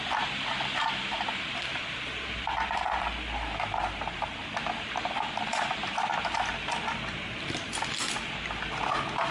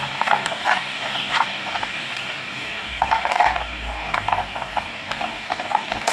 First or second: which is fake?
second